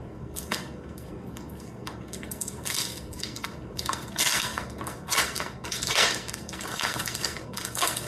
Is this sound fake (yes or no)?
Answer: yes